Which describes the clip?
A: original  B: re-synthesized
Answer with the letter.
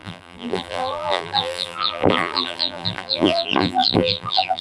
B